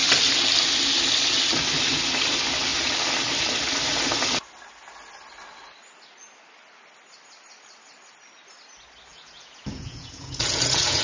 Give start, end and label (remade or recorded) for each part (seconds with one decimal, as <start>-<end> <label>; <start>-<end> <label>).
0.0-9.1 recorded; 9.1-11.0 remade